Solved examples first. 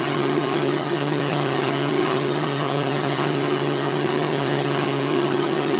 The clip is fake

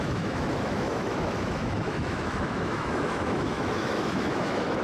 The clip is fake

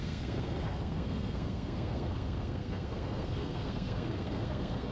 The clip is fake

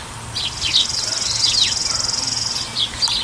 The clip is real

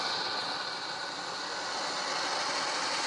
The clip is real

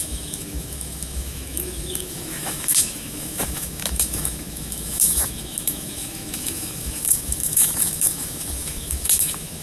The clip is fake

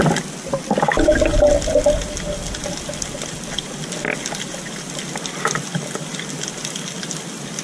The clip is real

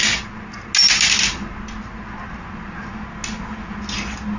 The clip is real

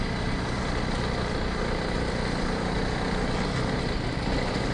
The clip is real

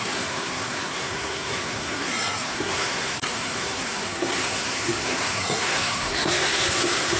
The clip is fake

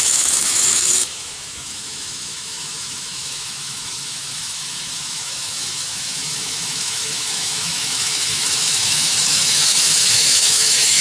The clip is fake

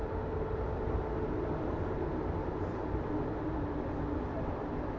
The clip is real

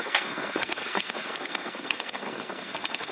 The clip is fake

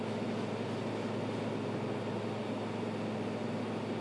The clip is real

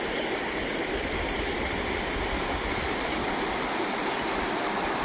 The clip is real